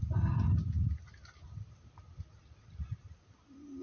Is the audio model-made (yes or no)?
no